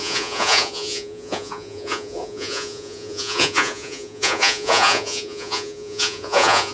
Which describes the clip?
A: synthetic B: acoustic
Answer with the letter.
A